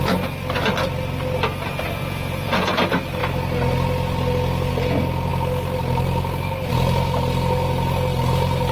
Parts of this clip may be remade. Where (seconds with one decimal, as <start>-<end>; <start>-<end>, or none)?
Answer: 2.0-2.7